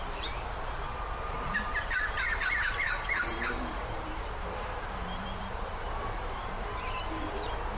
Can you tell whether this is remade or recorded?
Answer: remade